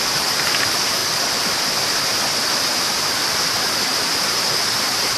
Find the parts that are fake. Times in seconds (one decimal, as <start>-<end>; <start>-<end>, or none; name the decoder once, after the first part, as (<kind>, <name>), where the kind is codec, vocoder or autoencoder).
none